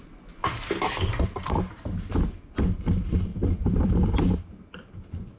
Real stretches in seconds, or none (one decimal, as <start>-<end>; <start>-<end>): 0.0-0.4; 2.1-3.3; 4.3-5.4